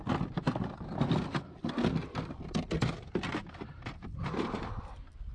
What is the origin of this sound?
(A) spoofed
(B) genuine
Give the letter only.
B